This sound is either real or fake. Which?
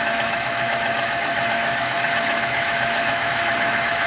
fake